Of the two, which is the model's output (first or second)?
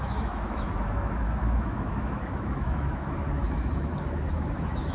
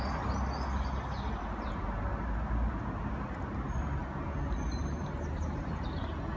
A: first